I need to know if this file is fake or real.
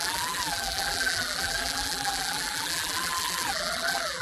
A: fake